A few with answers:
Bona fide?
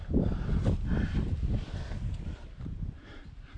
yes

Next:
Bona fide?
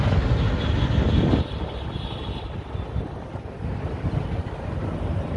yes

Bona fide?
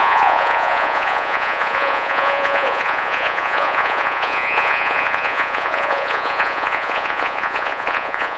no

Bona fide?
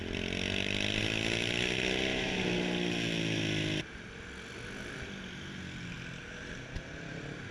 yes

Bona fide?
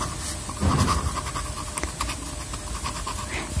yes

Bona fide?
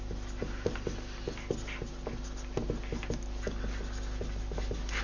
yes